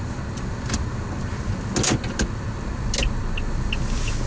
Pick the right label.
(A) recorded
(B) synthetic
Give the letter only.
A